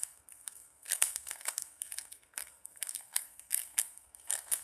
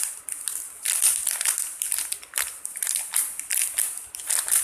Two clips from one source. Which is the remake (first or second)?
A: first